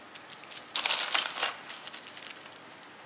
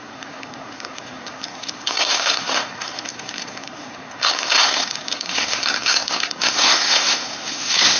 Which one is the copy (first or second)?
second